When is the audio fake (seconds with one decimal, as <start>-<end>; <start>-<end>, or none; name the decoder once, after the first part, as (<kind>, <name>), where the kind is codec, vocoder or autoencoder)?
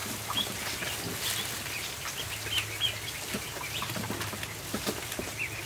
none